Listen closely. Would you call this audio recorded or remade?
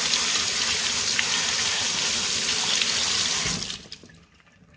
recorded